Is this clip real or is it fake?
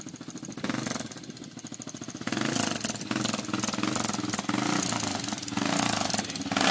real